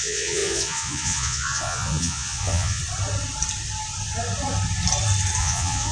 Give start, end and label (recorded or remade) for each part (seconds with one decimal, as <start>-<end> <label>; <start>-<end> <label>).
0.0-2.8 remade; 2.8-5.4 recorded; 5.4-5.9 remade